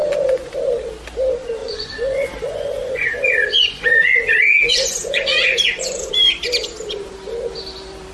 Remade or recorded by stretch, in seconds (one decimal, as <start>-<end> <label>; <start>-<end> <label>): 0.0-0.5 remade; 0.5-1.6 recorded; 1.6-6.1 remade; 6.1-8.1 recorded